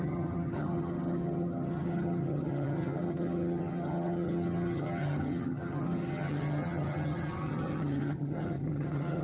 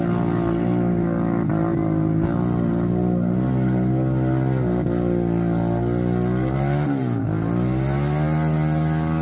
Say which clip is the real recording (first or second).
second